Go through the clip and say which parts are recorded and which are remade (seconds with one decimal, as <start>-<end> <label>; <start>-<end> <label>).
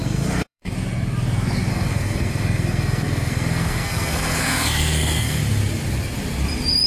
0.0-0.7 remade; 0.7-1.7 recorded; 1.7-5.4 remade; 5.4-6.9 recorded